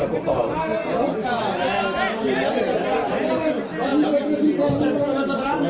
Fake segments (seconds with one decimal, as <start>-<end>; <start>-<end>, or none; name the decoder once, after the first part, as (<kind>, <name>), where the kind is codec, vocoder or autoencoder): none